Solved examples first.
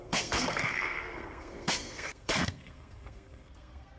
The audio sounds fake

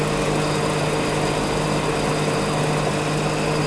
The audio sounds real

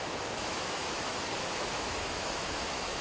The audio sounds fake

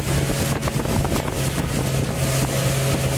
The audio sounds real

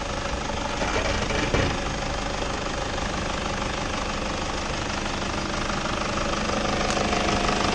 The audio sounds real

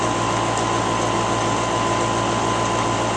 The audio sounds real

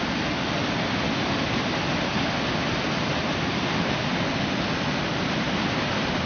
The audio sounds real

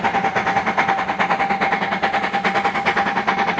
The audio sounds real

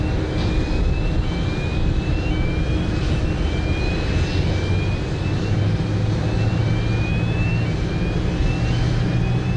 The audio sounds real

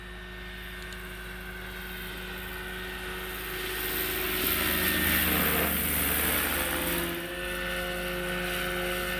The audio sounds real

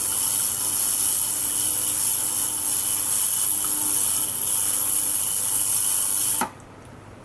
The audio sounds real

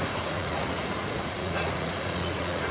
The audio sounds fake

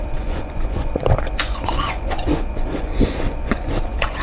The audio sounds fake